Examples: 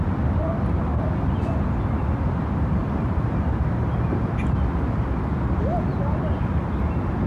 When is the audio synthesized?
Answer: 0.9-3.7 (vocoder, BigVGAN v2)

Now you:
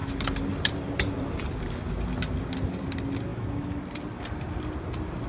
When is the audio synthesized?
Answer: 3.3-3.8 (autoencoder, DAC-VAE)

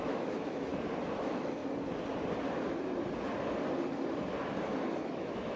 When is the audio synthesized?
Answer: 0.0-0.7 (autoencoder, DAC-VAE); 1.2-1.6; 5.0-5.6

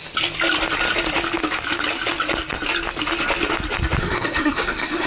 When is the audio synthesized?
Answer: 4.0-5.1 (codec, SNAC)

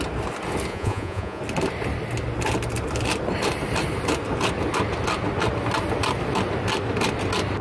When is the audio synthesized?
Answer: 0.7-1.4 (vocoder, Vocos)

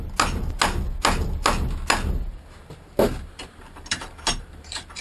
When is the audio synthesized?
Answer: 2.3-5.0 (vocoder, BigVGAN v2)

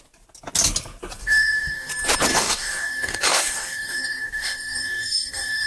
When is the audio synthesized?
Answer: 1.2-1.9 (codec, DAC); 2.3-5.7